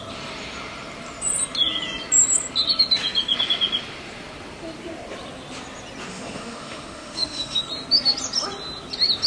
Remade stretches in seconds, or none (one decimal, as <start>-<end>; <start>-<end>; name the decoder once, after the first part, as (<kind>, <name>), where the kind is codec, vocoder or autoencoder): 6.1-7.6 (autoencoder, DAC-VAE)